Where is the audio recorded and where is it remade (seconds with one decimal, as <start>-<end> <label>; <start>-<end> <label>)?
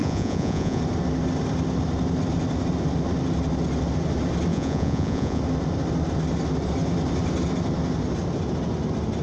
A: 0.0-0.8 remade; 0.8-4.5 recorded; 4.5-5.4 remade; 5.4-9.2 recorded